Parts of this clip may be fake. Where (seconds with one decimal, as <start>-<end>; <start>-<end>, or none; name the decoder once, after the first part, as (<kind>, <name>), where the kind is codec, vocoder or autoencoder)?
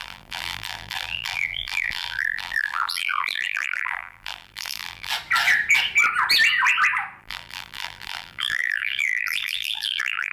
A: 0.0-5.1 (vocoder, BigVGAN v2); 7.2-10.3